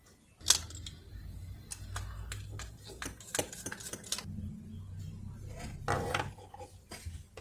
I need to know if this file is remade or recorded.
recorded